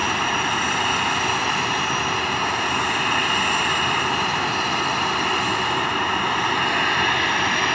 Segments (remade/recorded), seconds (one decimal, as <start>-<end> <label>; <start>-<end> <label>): 0.0-7.7 recorded